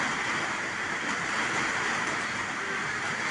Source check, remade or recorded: recorded